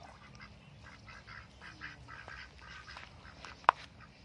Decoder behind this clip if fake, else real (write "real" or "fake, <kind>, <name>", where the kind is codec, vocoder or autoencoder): real